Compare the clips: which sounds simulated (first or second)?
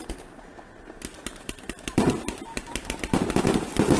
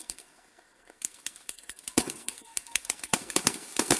second